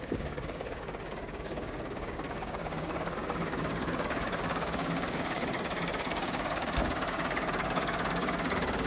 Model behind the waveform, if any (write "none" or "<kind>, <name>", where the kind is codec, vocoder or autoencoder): codec, DAC